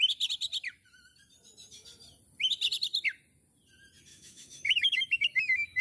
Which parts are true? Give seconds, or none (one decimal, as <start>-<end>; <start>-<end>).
0.0-4.1